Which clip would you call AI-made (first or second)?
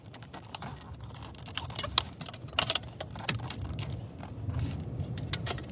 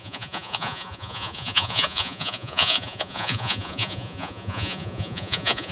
second